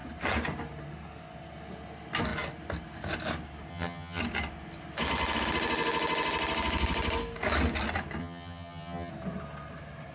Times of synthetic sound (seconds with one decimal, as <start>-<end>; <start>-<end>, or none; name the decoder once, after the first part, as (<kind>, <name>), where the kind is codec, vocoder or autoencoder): 3.7-4.2 (vocoder, HiFi-GAN); 8.2-9.1